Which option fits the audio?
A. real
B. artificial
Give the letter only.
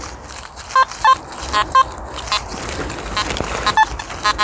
A